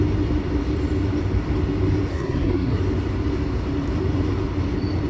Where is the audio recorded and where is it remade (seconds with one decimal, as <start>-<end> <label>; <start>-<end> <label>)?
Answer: 0.0-2.1 recorded; 2.1-2.8 remade; 2.8-5.1 recorded